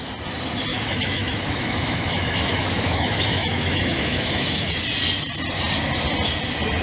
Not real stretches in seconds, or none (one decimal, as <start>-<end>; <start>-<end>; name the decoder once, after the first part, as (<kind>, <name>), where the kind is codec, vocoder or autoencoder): 0.7-4.8 (autoencoder, DAC-VAE)